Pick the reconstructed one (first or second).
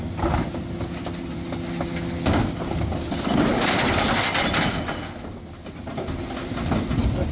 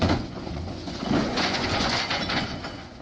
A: second